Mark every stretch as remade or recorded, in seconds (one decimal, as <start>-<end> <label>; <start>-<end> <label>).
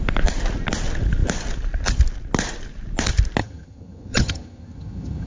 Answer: 0.0-3.4 recorded; 3.4-5.3 remade